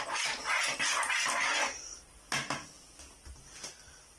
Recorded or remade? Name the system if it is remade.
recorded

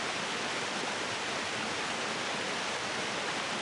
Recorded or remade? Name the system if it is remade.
recorded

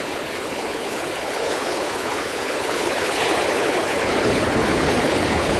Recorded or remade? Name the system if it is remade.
remade, codec, HILCodec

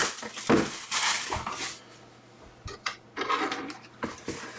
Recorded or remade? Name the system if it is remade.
recorded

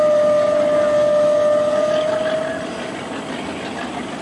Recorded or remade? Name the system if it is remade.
recorded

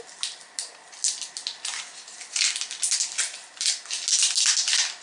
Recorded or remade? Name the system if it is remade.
recorded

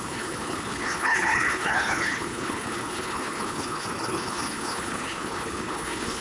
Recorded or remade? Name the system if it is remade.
remade, codec, HILCodec